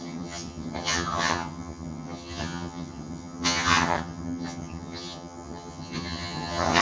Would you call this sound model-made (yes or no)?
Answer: yes